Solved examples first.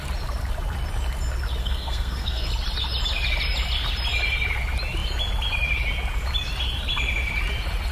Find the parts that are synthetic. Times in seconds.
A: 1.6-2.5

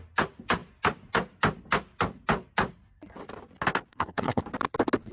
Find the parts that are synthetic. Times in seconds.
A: 3.9-4.4

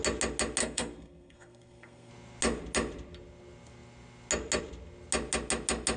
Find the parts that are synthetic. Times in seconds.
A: 0.6-2.1

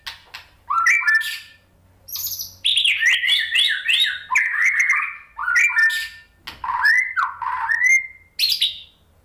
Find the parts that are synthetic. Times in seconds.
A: none

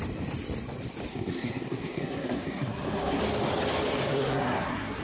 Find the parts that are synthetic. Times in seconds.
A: 1.1-3.2; 4.1-5.0

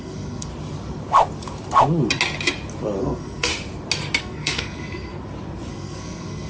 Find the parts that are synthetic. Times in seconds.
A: 0.0-0.5; 3.0-3.5; 4.2-5.1; 5.7-6.5